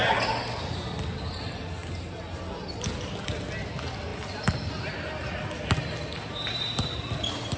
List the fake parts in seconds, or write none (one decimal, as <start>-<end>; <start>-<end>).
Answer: none